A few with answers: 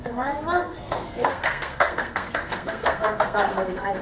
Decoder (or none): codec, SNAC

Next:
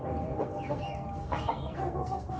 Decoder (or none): codec, SNAC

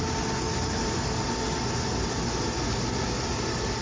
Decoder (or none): none